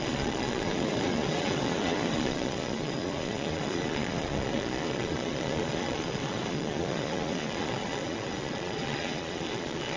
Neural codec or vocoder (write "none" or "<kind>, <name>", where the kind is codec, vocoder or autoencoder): vocoder, Vocos